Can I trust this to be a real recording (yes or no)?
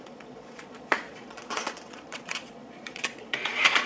no